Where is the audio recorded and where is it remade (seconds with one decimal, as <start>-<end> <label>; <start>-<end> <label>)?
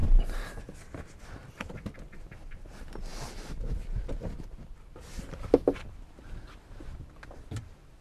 0.0-0.8 remade; 0.8-8.0 recorded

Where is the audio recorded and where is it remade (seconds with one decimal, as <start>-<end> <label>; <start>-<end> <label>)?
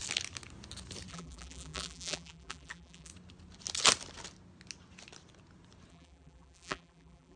0.0-1.1 recorded; 1.1-3.1 remade; 3.1-5.9 recorded; 5.9-7.4 remade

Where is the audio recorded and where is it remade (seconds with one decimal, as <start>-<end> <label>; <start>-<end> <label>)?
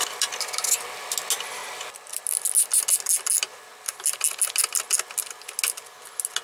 0.0-1.6 recorded; 1.6-2.2 remade; 2.2-6.4 recorded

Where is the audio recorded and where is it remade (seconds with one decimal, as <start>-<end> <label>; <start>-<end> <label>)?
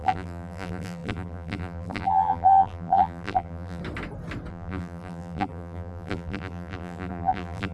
0.0-3.8 remade; 3.8-4.5 recorded; 4.5-7.7 remade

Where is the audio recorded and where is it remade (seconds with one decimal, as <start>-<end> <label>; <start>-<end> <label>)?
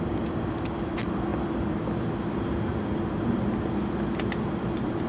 0.0-1.3 remade; 1.3-4.4 recorded; 4.4-5.1 remade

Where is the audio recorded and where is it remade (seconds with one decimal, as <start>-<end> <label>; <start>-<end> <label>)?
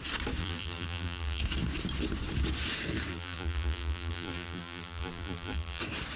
0.0-0.4 recorded; 0.4-1.4 remade; 1.4-3.1 recorded; 3.1-5.8 remade; 5.8-6.2 recorded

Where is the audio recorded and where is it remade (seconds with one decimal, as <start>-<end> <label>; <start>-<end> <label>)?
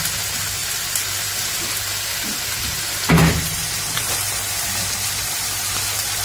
0.0-6.2 recorded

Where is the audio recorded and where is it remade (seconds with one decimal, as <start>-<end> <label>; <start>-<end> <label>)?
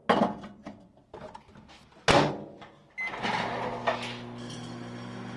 0.0-2.3 recorded; 2.3-2.8 remade; 2.8-5.4 recorded